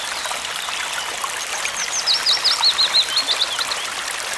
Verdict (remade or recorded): recorded